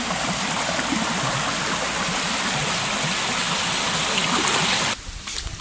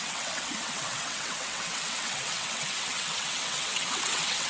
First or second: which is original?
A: first